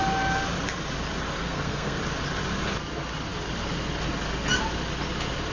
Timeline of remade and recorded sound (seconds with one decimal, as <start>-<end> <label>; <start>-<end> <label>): 0.0-1.4 recorded; 1.4-2.0 remade; 2.0-5.5 recorded